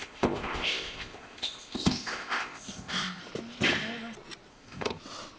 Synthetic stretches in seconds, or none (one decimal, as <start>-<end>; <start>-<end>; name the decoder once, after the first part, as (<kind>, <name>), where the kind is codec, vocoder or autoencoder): 0.0-3.2 (codec, ZipCodec); 4.5-5.0